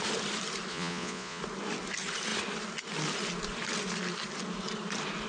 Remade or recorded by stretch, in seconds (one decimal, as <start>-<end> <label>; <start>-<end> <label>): 0.0-0.7 recorded; 0.7-1.4 remade; 1.4-5.3 recorded

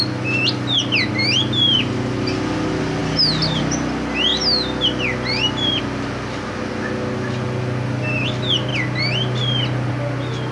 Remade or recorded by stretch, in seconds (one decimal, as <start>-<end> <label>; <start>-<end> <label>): 0.0-10.5 recorded

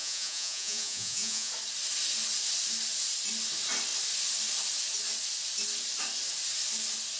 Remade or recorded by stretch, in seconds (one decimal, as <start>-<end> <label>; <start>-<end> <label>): 0.0-1.5 remade; 1.5-7.2 recorded

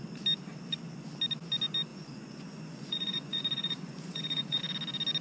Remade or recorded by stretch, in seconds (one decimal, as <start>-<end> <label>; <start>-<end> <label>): 0.0-1.9 recorded; 1.9-4.6 remade; 4.6-5.2 recorded

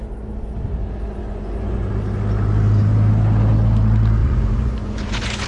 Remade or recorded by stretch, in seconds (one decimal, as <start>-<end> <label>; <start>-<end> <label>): 0.0-1.2 recorded; 1.2-1.9 remade; 1.9-4.2 recorded; 4.2-5.5 remade